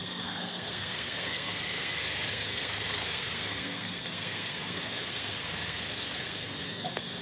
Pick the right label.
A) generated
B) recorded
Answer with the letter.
A